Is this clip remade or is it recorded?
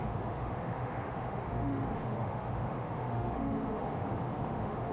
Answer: remade